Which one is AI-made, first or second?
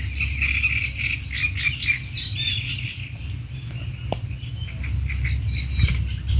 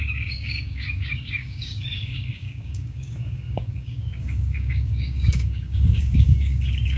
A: second